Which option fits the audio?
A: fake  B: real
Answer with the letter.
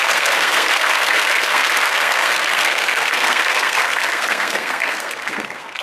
A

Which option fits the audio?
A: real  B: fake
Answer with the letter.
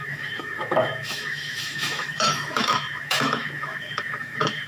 B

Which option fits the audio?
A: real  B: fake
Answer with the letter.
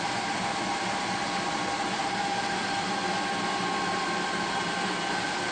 B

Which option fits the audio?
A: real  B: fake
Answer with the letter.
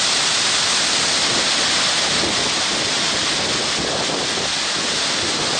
A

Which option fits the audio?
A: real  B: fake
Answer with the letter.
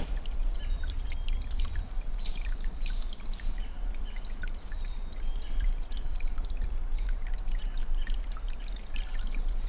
B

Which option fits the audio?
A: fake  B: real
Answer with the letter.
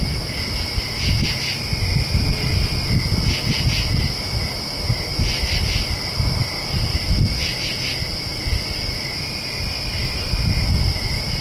B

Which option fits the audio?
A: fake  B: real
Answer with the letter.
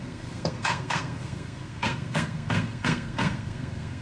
A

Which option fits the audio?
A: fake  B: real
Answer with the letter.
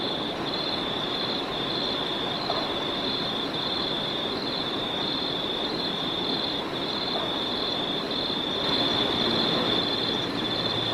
B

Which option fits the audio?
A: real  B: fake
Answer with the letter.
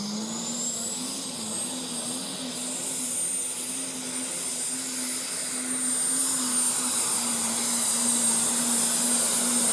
A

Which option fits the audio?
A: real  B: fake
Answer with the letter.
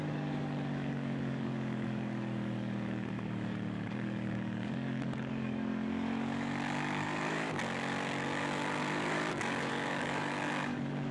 B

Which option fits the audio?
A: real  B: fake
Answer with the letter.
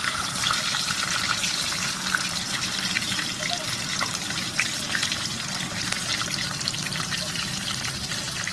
B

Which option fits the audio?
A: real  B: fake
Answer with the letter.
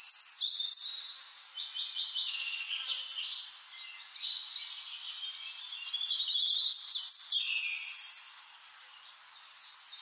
A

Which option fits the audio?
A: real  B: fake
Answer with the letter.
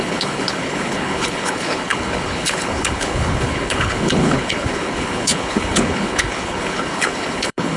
B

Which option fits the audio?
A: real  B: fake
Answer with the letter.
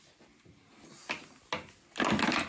A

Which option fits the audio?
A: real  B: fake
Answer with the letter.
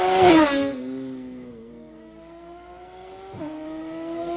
B